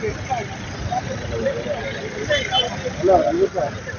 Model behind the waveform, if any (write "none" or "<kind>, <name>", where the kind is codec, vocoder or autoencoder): none